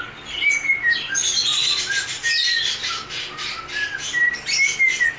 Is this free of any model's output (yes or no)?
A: yes